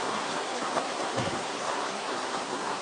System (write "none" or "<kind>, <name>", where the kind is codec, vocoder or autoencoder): codec, SNAC